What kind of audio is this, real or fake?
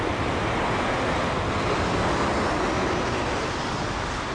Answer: real